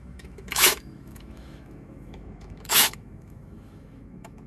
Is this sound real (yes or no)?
no